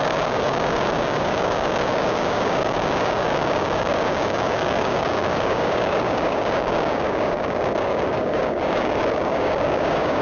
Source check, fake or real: fake